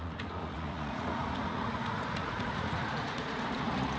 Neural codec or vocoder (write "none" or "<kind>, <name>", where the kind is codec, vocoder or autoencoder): vocoder, Vocos